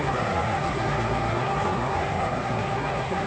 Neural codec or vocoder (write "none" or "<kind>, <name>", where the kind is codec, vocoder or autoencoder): codec, SNAC